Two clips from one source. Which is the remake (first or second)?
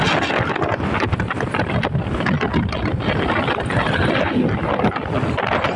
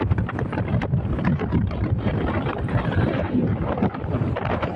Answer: second